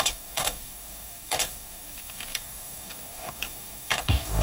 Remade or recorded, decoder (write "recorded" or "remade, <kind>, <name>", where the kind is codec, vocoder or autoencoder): remade, codec, DAC